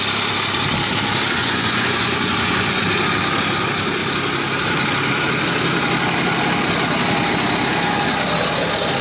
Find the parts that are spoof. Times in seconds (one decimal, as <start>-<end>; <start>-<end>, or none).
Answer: 1.4-2.8